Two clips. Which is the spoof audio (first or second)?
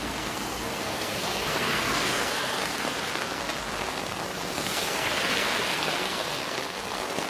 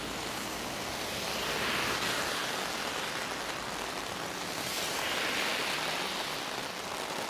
first